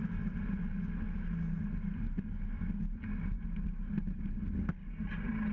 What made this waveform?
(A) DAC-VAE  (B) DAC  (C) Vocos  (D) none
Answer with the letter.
D